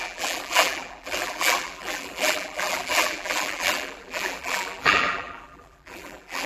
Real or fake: fake